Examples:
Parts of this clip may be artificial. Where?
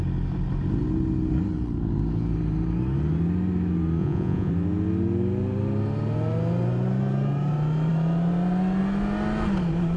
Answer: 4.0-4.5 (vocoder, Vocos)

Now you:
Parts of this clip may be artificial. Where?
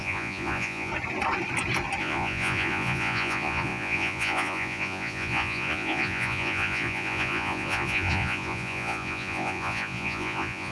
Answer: 0.0-0.9 (vocoder, Vocos); 2.0-10.7